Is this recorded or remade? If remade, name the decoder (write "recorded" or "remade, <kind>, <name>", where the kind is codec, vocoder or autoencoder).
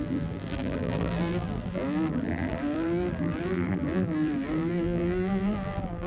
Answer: remade, vocoder, BigVGAN v2